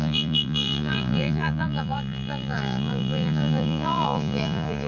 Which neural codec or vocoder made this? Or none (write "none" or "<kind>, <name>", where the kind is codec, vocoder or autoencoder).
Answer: vocoder, Vocos